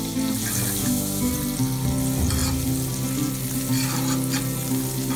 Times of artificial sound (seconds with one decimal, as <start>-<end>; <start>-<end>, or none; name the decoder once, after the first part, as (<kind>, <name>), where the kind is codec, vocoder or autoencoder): 0.8-1.3 (autoencoder, DAC-VAE)